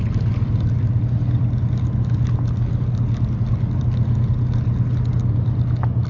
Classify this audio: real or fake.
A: real